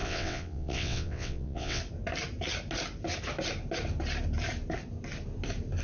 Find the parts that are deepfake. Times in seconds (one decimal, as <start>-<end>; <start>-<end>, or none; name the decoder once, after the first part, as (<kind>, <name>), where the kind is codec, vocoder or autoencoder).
0.0-1.8 (vocoder, WaveNeXt)